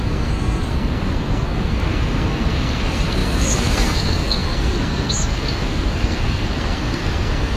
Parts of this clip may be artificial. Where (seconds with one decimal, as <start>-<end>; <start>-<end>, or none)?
0.0-7.6